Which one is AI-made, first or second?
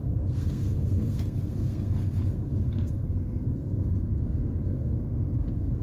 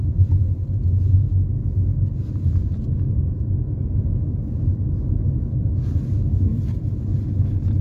first